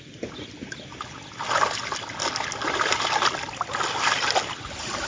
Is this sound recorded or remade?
recorded